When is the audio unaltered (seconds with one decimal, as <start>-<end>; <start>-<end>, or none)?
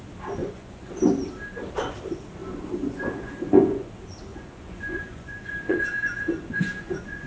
0.0-0.4; 0.9-2.4; 3.9-4.3